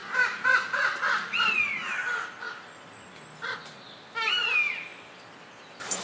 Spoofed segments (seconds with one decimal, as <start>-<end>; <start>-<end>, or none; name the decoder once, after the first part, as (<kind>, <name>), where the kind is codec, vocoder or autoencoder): 0.0-3.6 (vocoder, BigVGAN v2); 4.9-6.0